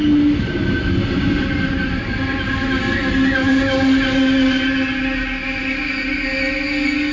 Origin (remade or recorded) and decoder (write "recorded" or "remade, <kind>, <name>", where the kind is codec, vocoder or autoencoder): recorded